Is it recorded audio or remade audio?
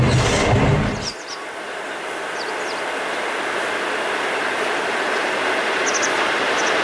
recorded